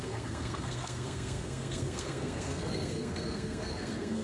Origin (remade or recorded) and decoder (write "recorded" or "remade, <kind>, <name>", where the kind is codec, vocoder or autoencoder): remade, codec, SNAC